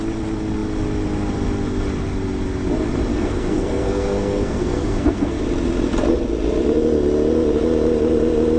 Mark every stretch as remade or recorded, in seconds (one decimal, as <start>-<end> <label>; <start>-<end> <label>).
0.0-3.1 recorded; 3.1-5.4 remade; 5.4-8.6 recorded